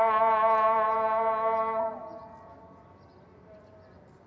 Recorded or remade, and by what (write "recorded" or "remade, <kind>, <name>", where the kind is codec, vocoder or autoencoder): recorded